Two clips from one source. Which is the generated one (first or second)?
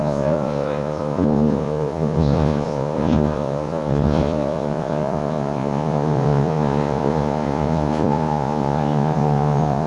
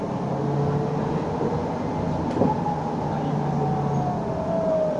first